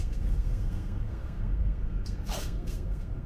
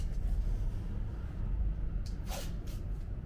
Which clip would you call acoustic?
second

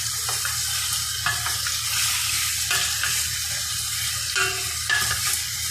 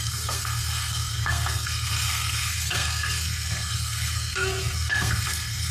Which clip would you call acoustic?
first